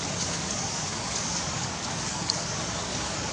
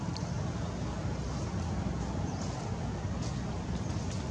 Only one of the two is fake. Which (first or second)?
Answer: first